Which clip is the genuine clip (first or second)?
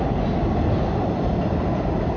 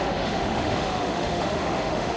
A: first